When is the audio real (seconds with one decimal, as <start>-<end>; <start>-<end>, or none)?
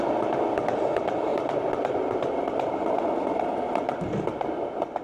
0.0-1.3; 3.0-5.0